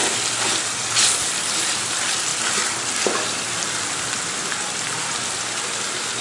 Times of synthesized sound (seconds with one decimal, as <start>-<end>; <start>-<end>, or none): 1.8-6.2